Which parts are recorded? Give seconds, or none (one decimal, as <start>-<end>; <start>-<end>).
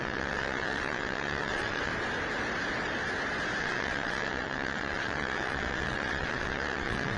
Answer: 1.9-3.6